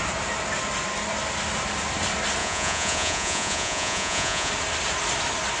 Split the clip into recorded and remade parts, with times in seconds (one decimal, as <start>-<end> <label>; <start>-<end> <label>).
0.0-2.4 recorded; 2.4-4.5 remade; 4.5-5.6 recorded